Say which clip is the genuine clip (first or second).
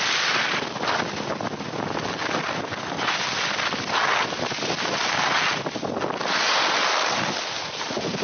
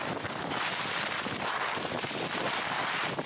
first